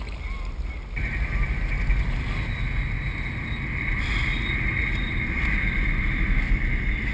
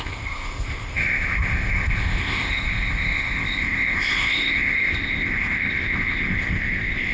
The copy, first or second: second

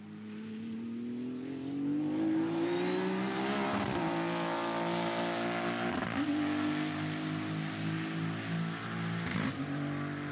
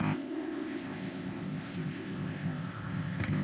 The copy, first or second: second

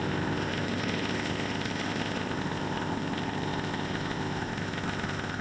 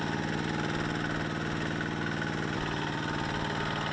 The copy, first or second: first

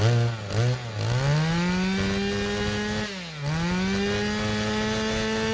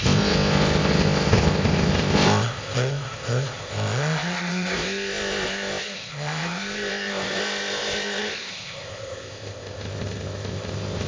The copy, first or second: second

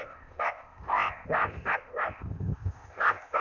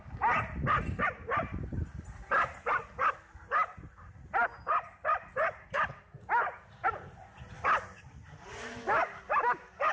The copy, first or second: first